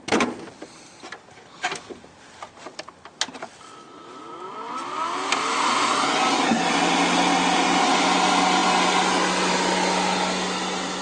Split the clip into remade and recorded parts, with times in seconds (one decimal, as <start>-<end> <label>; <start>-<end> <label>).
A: 0.0-11.0 recorded